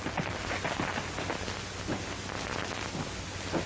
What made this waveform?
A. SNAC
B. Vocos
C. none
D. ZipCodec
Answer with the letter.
C